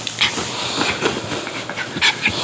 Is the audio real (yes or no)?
yes